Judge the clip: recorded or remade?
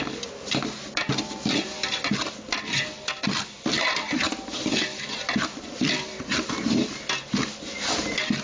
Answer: recorded